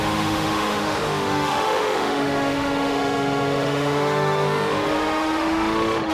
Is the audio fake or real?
fake